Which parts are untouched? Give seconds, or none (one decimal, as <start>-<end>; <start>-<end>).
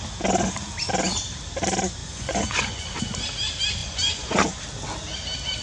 0.0-2.0; 3.0-3.8; 4.6-5.6